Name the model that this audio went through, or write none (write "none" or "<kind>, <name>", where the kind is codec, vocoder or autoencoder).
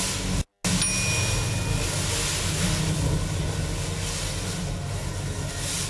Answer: none